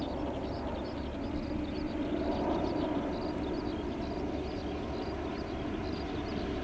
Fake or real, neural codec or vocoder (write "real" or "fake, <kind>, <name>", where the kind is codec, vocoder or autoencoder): real